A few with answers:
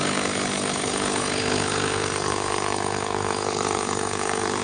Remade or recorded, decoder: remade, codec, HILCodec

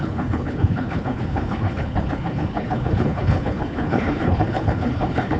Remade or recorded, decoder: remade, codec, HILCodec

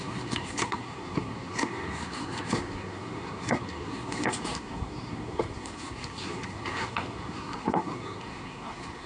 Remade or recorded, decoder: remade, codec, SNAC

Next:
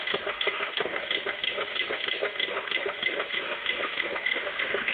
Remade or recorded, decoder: remade, autoencoder, DAC-VAE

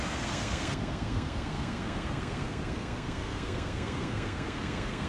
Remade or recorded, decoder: remade, codec, SNAC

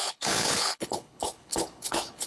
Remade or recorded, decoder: remade, codec, HILCodec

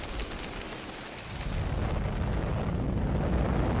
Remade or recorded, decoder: recorded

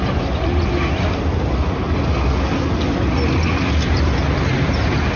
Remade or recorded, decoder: recorded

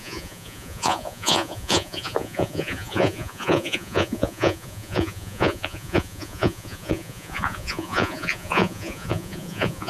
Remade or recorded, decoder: remade, vocoder, Vocos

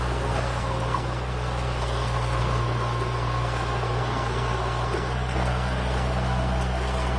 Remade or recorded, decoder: remade, codec, SNAC